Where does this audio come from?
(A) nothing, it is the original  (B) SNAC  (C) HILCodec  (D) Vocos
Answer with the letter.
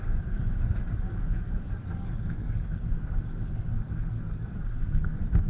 B